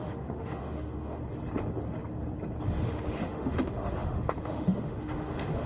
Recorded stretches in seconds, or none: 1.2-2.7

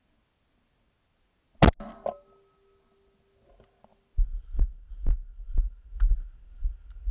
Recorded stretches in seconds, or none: 0.0-7.1

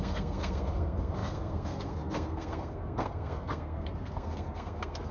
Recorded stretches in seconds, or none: none